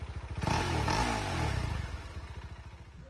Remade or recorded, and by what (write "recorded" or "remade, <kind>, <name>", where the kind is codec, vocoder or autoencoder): recorded